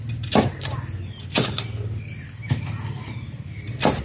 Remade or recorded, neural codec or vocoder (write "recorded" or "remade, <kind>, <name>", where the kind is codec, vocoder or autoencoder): recorded